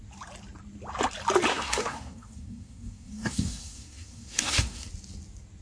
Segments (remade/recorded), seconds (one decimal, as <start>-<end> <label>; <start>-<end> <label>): 0.0-1.5 recorded; 1.5-4.9 remade; 4.9-5.6 recorded